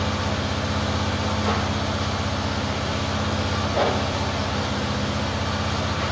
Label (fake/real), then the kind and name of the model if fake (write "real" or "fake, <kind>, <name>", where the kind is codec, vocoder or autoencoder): real